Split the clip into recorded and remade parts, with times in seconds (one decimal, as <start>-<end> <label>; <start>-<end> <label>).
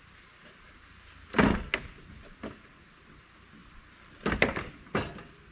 0.0-5.5 recorded